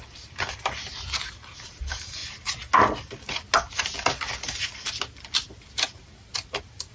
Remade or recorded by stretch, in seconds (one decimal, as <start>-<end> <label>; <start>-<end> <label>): 0.0-2.2 remade; 2.2-5.7 recorded; 5.7-6.9 remade